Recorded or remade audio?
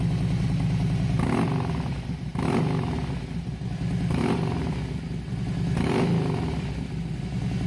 recorded